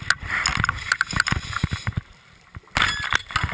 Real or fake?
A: real